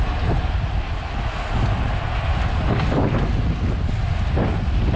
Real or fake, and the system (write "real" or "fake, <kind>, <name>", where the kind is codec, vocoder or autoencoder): real